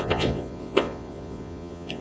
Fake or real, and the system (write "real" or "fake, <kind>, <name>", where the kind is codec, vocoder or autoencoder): fake, vocoder, Vocos